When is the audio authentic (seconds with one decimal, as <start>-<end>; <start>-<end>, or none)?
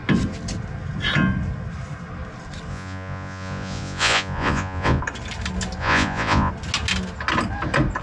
0.0-2.7; 5.0-5.8; 6.5-8.0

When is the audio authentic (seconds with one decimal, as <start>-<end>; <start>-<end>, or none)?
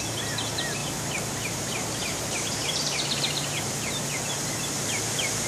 0.0-0.8; 4.1-5.5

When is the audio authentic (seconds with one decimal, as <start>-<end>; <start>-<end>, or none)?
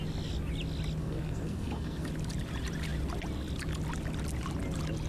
0.0-1.0; 2.1-5.1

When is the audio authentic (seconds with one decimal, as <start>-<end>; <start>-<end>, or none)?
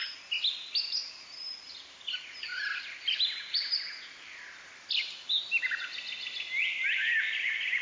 0.0-2.5; 5.5-7.8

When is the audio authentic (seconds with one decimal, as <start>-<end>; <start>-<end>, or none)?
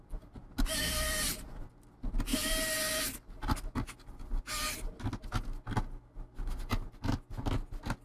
0.0-8.0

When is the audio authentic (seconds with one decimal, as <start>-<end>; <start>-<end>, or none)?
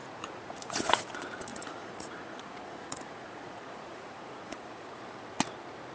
1.0-1.5; 5.0-5.9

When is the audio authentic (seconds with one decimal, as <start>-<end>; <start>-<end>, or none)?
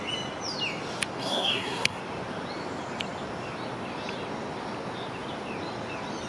0.0-1.2; 2.0-6.3